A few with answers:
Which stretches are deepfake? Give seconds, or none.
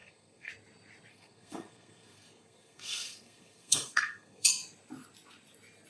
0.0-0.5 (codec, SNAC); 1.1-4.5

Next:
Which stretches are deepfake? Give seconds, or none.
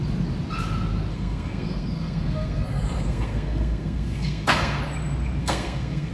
1.1-4.8 (codec, SNAC); 5.4-6.1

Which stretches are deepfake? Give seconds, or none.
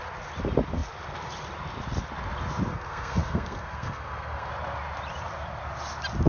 2.7-4.5 (codec, SNAC)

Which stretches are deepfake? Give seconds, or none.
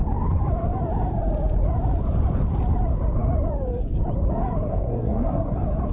4.7-5.5 (codec, SNAC)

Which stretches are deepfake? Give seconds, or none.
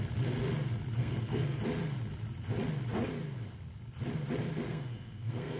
1.0-1.6 (codec, SNAC); 4.7-5.6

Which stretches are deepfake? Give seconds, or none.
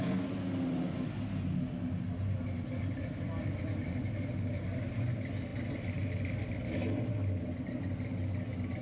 none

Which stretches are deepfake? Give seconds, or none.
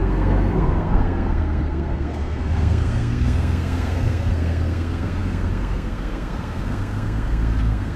0.0-8.0 (codec, SNAC)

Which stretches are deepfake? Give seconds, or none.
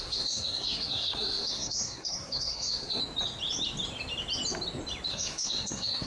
0.0-3.0 (codec, SNAC); 5.1-6.1